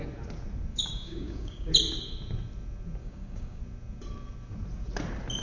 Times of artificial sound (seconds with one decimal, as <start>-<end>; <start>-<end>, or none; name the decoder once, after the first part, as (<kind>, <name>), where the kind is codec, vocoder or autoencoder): 0.7-1.7 (codec, DAC); 3.0-3.6